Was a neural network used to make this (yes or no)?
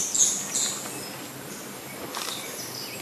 no